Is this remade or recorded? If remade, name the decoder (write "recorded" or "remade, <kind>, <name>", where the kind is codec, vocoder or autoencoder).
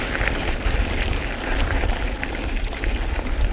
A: recorded